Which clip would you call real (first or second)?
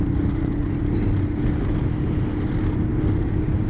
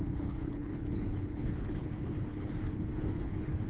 first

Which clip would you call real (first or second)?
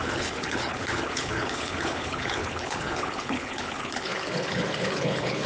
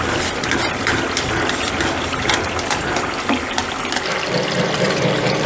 second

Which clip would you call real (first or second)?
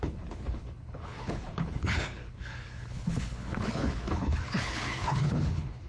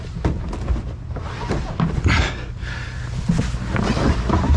second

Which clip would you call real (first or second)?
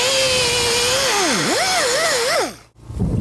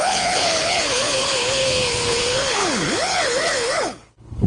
first